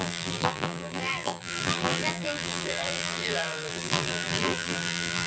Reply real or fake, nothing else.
fake